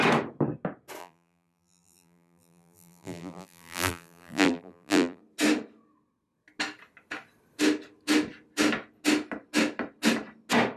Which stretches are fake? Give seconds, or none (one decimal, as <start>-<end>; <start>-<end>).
1.0-5.2